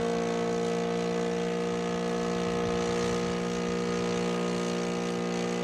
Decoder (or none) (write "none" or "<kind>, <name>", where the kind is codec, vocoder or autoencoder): none